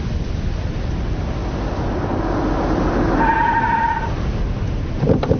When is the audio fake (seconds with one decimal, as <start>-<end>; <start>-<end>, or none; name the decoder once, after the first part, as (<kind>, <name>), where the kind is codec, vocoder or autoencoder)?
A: none